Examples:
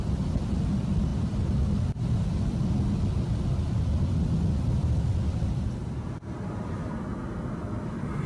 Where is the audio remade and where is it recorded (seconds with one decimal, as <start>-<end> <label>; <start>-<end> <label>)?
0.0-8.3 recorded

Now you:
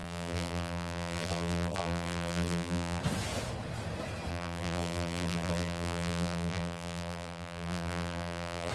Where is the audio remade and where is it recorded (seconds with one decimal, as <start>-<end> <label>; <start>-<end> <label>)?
0.0-3.0 remade; 3.0-4.3 recorded; 4.3-8.7 remade

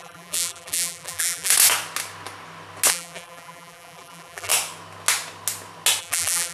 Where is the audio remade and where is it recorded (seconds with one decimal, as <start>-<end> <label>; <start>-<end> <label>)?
0.0-1.5 remade; 1.5-2.9 recorded; 2.9-4.5 remade; 4.5-6.0 recorded; 6.0-6.5 remade

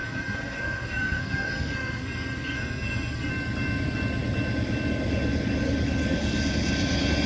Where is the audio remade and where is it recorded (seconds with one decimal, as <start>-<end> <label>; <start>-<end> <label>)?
0.0-3.3 remade; 3.3-7.3 recorded

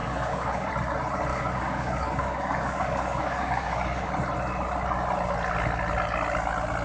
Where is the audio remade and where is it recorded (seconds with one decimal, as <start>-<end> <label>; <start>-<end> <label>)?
0.0-0.7 remade; 0.7-1.3 recorded; 1.3-4.1 remade; 4.1-6.8 recorded

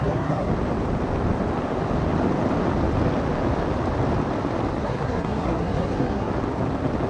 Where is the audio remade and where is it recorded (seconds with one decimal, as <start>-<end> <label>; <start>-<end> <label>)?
0.0-0.5 remade; 0.5-4.8 recorded; 4.8-6.3 remade; 6.3-7.1 recorded

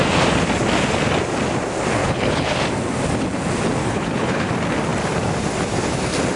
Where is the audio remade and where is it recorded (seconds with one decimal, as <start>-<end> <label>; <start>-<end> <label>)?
0.0-2.0 recorded; 2.0-2.5 remade; 2.5-3.8 recorded; 3.8-4.5 remade; 4.5-6.4 recorded